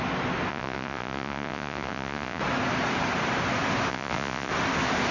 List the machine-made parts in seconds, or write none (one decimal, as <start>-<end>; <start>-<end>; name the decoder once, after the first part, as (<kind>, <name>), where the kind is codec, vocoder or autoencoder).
0.5-2.4 (vocoder, Vocos); 3.9-4.5